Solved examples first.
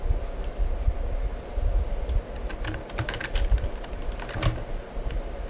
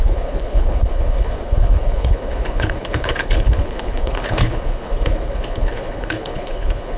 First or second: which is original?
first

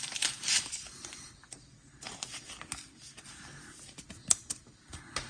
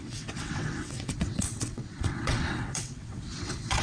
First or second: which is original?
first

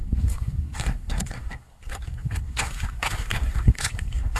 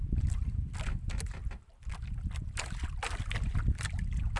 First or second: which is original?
second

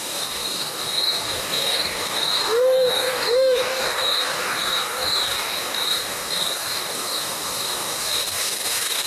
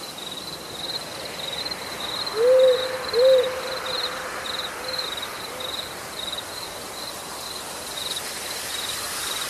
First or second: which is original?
second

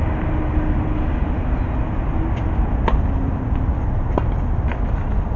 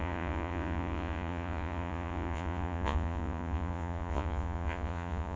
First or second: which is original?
first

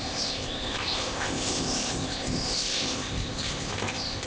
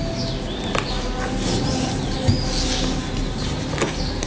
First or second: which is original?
second